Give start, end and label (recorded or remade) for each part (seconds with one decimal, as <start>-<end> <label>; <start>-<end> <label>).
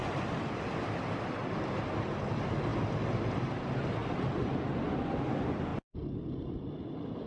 0.0-0.6 remade; 0.6-5.7 recorded; 5.7-7.3 remade